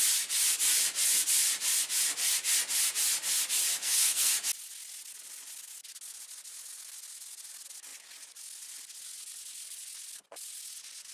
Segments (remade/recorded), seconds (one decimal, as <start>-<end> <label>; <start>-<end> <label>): 0.0-3.7 recorded; 3.7-4.3 remade; 4.3-11.1 recorded